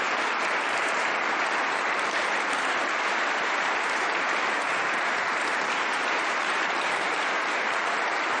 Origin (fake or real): fake